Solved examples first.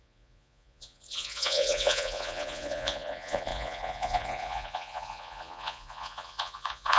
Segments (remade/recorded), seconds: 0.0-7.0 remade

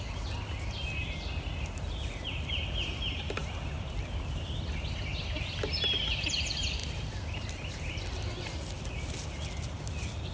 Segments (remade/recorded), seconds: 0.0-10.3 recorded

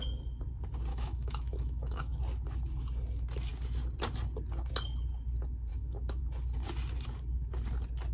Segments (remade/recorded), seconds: 0.0-0.9 recorded; 0.9-2.2 remade; 2.2-5.7 recorded; 5.7-6.2 remade; 6.2-8.1 recorded

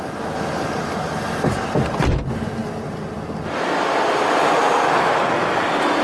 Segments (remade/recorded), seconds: 0.0-6.0 recorded

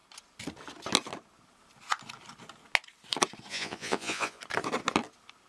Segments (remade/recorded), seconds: 0.0-3.5 recorded; 3.5-4.4 remade; 4.4-5.5 recorded